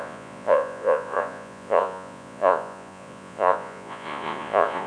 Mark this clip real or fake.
fake